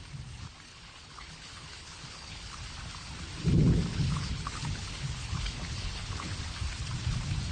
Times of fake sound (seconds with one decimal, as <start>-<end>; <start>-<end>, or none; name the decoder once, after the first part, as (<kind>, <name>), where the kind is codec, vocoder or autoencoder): 0.7-2.6 (codec, HILCodec); 3.9-6.4

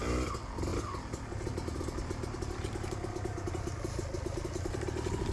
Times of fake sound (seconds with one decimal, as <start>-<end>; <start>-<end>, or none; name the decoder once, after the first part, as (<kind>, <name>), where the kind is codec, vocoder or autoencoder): none

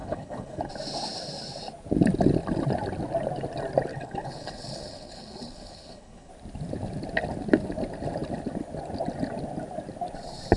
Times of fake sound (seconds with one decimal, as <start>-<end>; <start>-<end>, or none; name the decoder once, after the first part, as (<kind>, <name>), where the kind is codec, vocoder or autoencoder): 0.0-0.7 (codec, HILCodec); 3.9-6.3

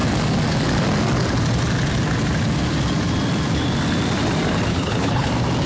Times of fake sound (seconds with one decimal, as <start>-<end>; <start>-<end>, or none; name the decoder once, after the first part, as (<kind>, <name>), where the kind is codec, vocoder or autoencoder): 4.7-5.3 (codec, HILCodec)

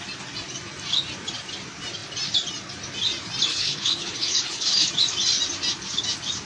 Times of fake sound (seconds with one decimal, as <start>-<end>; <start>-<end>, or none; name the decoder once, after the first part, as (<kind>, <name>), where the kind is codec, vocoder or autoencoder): 3.5-4.9 (codec, HILCodec)